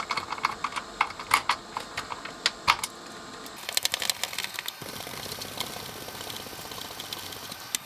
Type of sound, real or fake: real